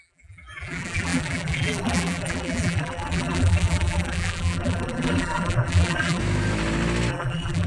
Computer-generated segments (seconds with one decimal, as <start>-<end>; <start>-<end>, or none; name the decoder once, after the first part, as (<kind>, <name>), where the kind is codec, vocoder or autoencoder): 0.0-6.2 (vocoder, BigVGAN v2); 7.1-7.7